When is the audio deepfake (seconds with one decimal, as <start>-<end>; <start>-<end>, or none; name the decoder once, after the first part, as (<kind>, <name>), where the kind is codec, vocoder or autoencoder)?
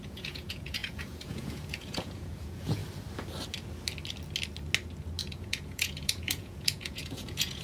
0.0-2.8 (vocoder, Vocos); 5.2-7.6